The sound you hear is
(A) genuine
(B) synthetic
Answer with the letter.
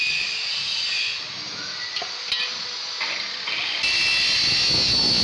A